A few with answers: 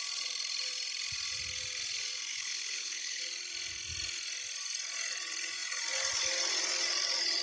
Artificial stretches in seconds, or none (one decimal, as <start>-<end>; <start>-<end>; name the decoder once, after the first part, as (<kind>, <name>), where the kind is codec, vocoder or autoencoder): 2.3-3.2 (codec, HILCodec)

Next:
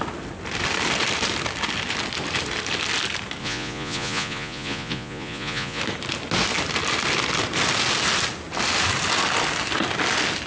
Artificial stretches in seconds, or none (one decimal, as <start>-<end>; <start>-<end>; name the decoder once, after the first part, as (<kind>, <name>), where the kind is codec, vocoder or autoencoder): 3.4-5.8 (vocoder, Vocos)

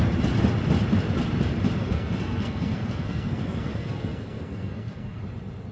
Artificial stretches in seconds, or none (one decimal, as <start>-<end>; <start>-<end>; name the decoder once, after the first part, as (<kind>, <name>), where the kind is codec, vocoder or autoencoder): 1.8-5.2 (codec, SNAC)

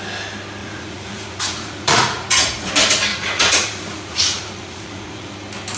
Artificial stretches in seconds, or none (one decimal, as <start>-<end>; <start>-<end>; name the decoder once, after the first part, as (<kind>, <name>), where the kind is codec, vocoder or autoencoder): 0.6-2.7 (vocoder, Vocos); 3.1-5.3

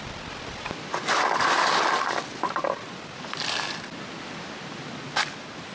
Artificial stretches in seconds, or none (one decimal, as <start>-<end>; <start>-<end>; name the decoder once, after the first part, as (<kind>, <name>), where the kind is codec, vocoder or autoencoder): none

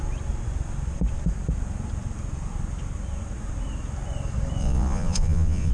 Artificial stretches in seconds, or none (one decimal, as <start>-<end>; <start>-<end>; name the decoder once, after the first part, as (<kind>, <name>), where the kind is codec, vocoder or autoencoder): 4.6-5.7 (vocoder, Vocos)